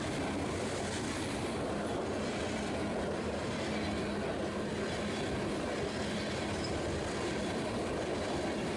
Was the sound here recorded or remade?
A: recorded